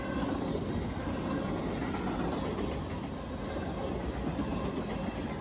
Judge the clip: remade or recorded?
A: recorded